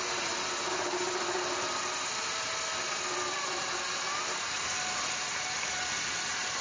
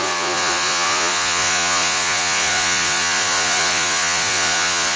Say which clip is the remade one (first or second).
second